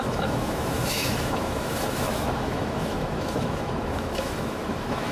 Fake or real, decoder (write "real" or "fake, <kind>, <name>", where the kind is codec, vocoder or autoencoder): fake, autoencoder, DAC-VAE